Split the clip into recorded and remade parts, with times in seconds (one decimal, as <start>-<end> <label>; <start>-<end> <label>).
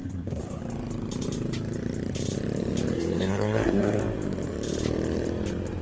0.0-0.6 remade; 0.6-2.9 recorded; 2.9-4.0 remade; 4.0-5.8 recorded